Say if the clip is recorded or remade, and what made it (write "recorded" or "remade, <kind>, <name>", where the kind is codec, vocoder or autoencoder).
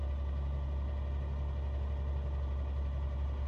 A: recorded